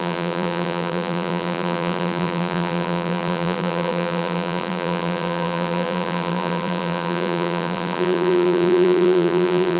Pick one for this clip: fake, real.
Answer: fake